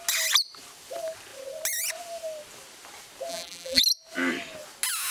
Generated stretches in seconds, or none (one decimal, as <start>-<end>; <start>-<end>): 3.3-3.8